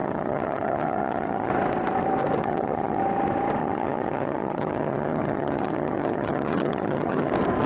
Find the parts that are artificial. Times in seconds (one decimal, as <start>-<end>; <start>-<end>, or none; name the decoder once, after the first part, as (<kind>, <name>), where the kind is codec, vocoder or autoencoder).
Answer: 0.0-1.5 (vocoder, HiFi-GAN); 2.4-3.0; 3.6-7.3